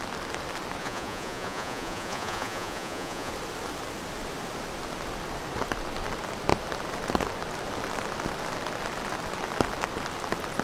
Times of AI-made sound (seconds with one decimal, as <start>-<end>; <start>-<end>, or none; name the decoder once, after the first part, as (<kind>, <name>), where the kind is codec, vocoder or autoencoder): 0.8-3.3 (vocoder, Vocos)